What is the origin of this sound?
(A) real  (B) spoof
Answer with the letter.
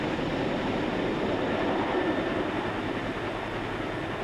A